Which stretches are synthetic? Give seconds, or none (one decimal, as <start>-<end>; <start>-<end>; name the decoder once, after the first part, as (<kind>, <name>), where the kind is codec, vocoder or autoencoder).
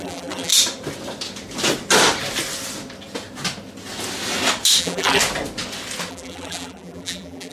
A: 0.0-0.5 (vocoder, BigVGAN v2); 4.8-5.2; 6.1-7.5